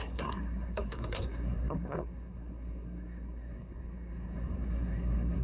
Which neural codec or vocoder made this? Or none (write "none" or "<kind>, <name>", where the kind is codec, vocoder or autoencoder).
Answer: codec, SNAC